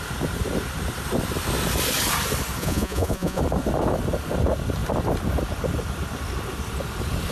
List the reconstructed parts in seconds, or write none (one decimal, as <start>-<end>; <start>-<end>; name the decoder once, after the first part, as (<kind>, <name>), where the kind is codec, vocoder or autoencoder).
2.6-3.4 (vocoder, Vocos)